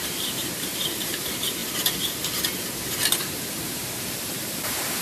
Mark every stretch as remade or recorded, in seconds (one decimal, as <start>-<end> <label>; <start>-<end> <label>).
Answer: 0.0-1.6 remade; 1.6-3.2 recorded; 3.2-5.0 remade